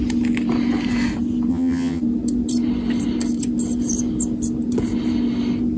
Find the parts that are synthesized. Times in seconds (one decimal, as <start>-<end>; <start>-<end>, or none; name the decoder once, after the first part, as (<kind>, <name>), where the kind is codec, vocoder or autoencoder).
1.5-2.0 (vocoder, HiFi-GAN)